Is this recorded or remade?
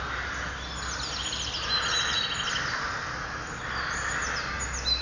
recorded